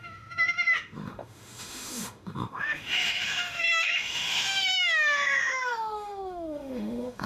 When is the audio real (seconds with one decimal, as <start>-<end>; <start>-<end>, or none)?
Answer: none